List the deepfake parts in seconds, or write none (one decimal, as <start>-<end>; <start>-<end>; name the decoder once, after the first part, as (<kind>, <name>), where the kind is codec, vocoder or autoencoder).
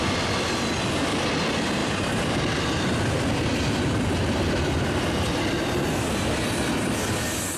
1.8-2.4 (vocoder, BigVGAN v2)